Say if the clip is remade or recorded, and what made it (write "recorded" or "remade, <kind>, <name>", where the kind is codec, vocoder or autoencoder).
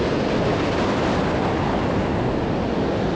recorded